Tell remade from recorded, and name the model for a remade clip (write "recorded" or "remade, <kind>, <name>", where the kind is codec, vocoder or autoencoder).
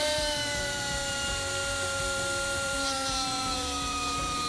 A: remade, vocoder, BigVGAN v2